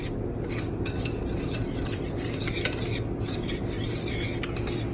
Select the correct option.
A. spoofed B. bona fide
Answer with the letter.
B